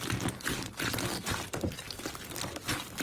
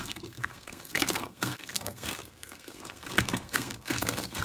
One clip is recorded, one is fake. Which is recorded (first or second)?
first